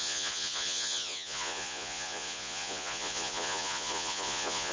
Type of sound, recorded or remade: remade